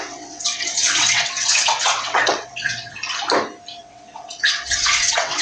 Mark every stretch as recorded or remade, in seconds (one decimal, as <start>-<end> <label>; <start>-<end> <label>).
0.0-3.0 remade; 3.0-3.8 recorded; 3.8-5.4 remade